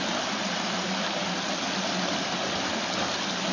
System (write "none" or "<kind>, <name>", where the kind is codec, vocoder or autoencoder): none